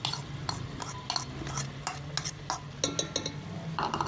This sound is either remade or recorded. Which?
recorded